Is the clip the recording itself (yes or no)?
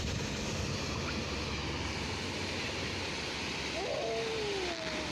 yes